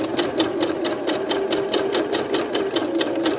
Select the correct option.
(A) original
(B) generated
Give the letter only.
A